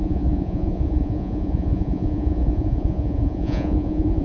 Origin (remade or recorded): remade